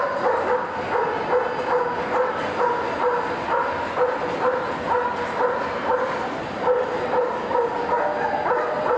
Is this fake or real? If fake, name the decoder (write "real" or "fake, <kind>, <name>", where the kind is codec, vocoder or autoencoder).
real